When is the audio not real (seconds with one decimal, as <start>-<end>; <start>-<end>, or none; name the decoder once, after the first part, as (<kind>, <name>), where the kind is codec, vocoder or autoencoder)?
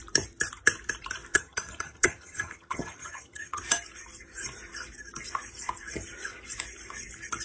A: 1.3-3.6 (vocoder, HiFi-GAN)